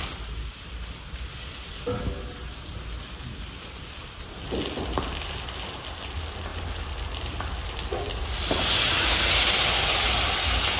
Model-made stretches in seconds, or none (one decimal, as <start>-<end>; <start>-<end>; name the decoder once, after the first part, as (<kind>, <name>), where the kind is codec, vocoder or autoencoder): none